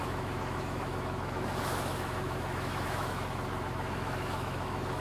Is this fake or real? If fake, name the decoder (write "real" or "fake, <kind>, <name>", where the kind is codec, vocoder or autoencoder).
fake, autoencoder, DAC-VAE